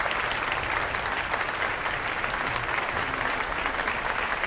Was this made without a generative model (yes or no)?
yes